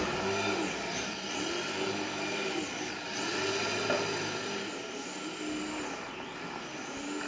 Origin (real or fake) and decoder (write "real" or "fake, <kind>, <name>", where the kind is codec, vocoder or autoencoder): real